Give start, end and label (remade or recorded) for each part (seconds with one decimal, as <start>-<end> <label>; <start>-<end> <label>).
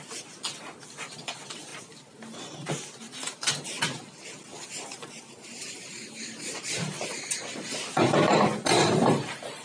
0.0-9.6 recorded